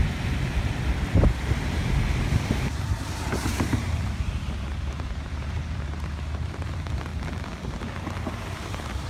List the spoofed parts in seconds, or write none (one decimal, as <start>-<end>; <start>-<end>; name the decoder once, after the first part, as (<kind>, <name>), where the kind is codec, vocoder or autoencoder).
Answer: 1.4-7.1 (vocoder, BigVGAN v2); 7.8-9.1